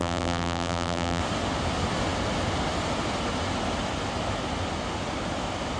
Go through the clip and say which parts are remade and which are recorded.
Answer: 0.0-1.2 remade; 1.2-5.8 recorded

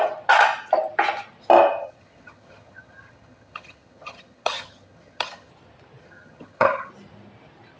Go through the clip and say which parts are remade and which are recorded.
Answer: 0.0-1.8 recorded; 1.8-5.5 remade; 5.5-6.0 recorded; 6.0-6.9 remade; 6.9-7.8 recorded

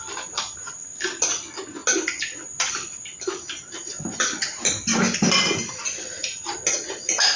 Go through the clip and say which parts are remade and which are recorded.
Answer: 0.0-1.8 remade; 1.8-2.7 recorded; 2.7-7.4 remade

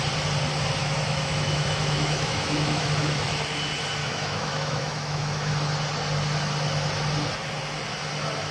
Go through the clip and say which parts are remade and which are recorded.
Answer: 0.0-0.8 recorded; 0.8-3.3 remade; 3.3-4.0 recorded; 4.0-5.5 remade; 5.5-8.5 recorded

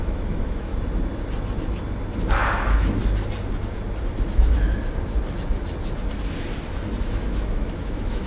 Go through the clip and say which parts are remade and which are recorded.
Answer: 0.0-0.7 remade; 0.7-2.2 recorded; 2.2-3.0 remade; 3.0-7.0 recorded; 7.0-8.3 remade

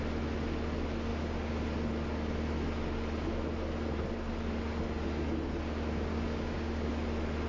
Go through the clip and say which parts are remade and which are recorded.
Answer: 0.0-6.1 recorded; 6.1-6.9 remade; 6.9-7.5 recorded

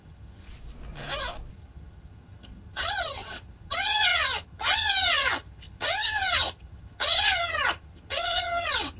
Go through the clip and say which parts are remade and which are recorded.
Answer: 0.0-0.5 remade; 0.5-1.5 recorded; 1.5-9.0 remade